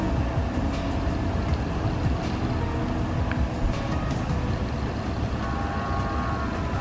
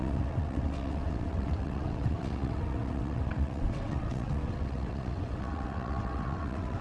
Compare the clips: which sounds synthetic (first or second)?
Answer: second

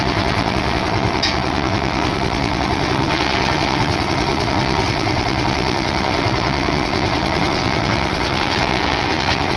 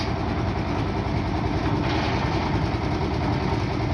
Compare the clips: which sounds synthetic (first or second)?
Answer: first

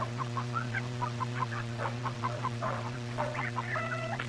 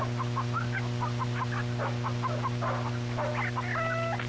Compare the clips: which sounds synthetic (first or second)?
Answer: first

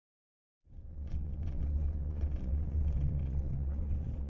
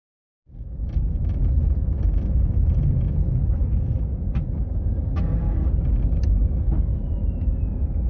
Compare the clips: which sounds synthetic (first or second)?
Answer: first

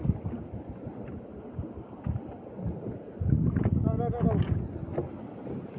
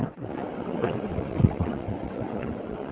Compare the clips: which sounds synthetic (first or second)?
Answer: second